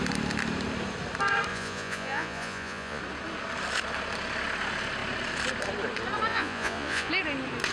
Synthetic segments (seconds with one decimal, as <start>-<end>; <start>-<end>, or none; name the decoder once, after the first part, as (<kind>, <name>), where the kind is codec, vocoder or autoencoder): 1.5-3.0 (vocoder, Vocos); 6.3-7.1